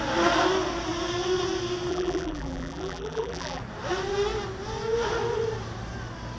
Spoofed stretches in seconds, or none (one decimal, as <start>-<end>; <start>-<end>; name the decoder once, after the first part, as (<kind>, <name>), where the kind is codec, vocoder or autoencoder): 1.9-3.6 (vocoder, BigVGAN v2)